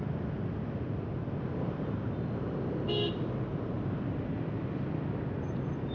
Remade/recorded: recorded